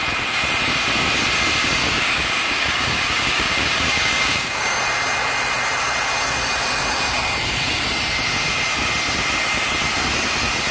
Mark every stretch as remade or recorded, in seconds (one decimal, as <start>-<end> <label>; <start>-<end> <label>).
0.0-1.8 recorded; 1.8-4.8 remade; 4.8-10.7 recorded